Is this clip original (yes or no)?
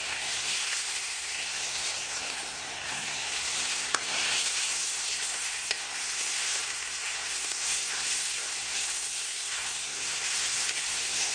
no